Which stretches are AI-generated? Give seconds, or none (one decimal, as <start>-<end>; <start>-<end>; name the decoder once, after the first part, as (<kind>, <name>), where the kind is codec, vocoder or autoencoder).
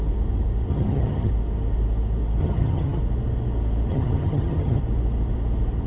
0.7-1.3 (vocoder, HiFi-GAN); 2.4-3.0; 3.9-4.8